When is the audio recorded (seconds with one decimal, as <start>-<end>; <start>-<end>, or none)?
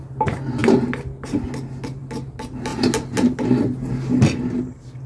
0.0-5.1